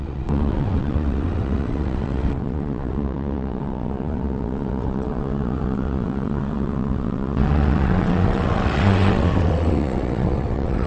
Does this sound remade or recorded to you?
remade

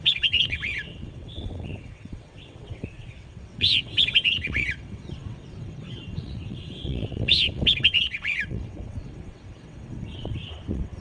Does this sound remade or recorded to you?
remade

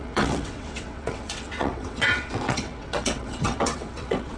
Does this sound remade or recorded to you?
remade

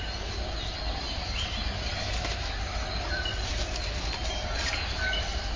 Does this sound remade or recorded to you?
recorded